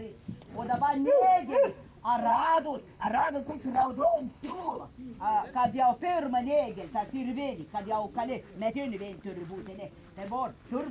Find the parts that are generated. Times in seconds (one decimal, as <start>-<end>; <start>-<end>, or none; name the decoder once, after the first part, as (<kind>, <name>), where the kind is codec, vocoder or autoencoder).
2.3-4.8 (codec, HILCodec)